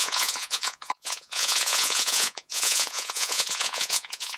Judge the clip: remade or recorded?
remade